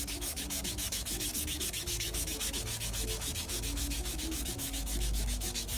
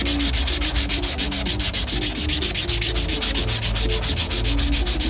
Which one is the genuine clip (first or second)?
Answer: second